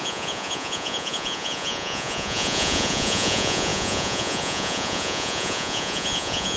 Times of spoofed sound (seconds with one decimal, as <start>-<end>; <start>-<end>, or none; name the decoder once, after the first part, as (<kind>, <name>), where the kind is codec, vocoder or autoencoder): 0.0-6.6 (vocoder, Vocos)